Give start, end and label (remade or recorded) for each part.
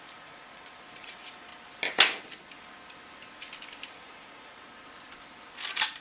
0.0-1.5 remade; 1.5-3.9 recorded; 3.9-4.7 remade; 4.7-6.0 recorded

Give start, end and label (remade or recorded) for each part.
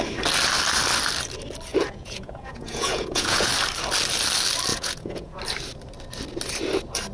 0.0-1.7 recorded; 1.7-3.5 remade; 3.5-4.7 recorded; 4.7-5.4 remade; 5.4-7.1 recorded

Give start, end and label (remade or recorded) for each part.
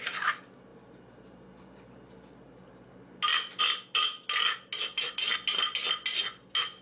0.0-6.8 recorded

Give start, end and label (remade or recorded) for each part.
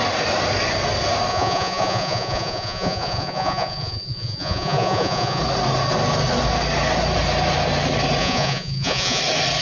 0.0-1.3 recorded; 1.3-5.4 remade; 5.4-8.2 recorded; 8.2-9.2 remade; 9.2-9.6 recorded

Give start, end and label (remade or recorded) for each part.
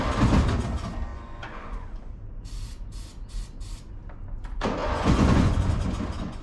0.0-1.1 recorded; 1.1-2.1 remade; 2.1-4.8 recorded; 4.8-6.4 remade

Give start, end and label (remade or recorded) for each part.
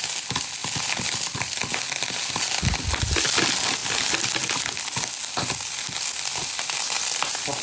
0.0-7.6 recorded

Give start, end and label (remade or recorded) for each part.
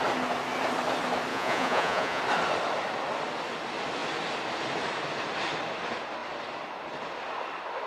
0.0-1.3 recorded; 1.3-2.2 remade; 2.2-7.9 recorded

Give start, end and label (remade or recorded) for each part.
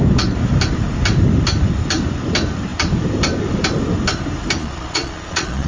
0.0-4.6 recorded; 4.6-5.7 remade